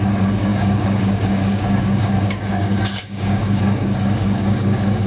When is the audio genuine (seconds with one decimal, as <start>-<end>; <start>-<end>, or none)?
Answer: none